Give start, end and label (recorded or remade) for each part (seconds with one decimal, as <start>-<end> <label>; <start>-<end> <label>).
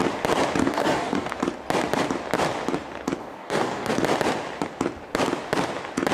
0.0-0.6 recorded; 0.6-1.3 remade; 1.3-3.2 recorded; 3.2-3.9 remade; 3.9-6.1 recorded